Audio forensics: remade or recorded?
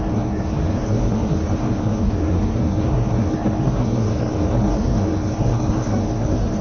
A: remade